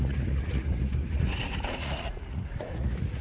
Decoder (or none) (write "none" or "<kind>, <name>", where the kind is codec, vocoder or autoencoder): vocoder, Vocos